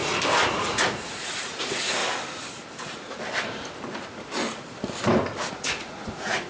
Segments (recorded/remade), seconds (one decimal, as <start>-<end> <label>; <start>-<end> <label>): 0.0-0.5 recorded; 0.5-2.0 remade; 2.0-5.5 recorded; 5.5-6.5 remade